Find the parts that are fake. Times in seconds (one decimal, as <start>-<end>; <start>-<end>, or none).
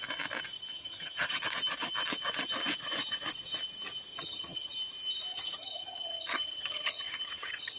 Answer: 0.7-1.4; 4.1-4.7; 5.3-7.8